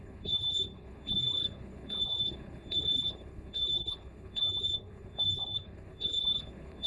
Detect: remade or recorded remade